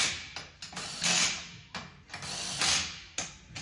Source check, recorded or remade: recorded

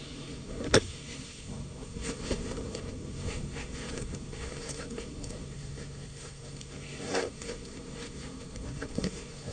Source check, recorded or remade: remade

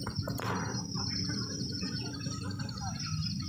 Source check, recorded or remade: remade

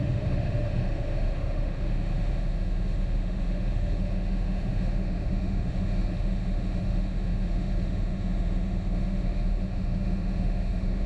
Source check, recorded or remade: remade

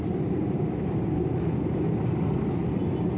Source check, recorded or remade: recorded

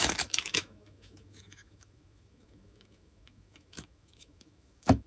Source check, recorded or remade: remade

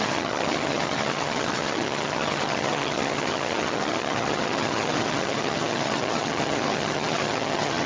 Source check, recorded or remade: remade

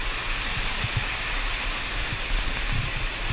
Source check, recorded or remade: recorded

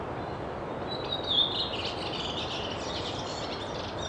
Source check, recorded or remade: recorded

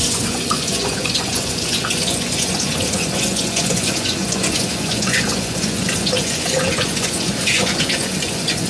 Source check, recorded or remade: remade